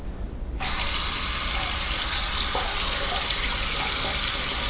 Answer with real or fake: real